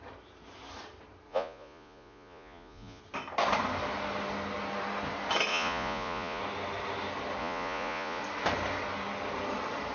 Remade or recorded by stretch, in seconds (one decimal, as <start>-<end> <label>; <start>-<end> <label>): 0.0-1.3 recorded; 1.3-3.0 remade; 3.0-5.5 recorded; 5.5-6.4 remade; 6.4-7.4 recorded; 7.4-8.2 remade; 8.2-9.9 recorded